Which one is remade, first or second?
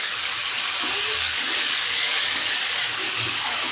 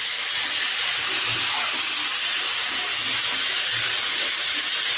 first